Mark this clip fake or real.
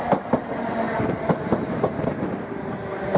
real